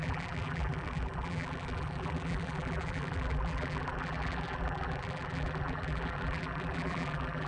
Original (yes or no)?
no